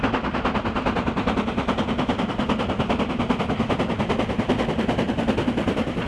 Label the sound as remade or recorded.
recorded